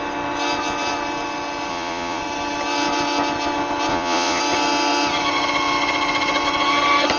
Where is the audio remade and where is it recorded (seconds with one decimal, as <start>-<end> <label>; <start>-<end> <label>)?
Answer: 0.0-1.7 recorded; 1.7-2.2 remade; 2.2-3.9 recorded; 3.9-4.4 remade; 4.4-7.2 recorded